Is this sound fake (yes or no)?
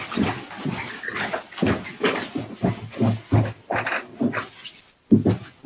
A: no